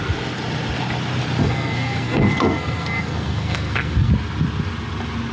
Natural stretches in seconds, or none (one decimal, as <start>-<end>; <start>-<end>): 0.0-1.4; 4.1-5.3